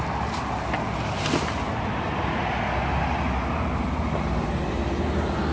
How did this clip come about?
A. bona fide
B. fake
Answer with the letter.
A